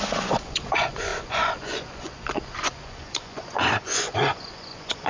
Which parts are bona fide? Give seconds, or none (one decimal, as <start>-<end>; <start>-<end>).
none